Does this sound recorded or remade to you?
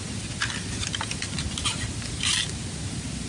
recorded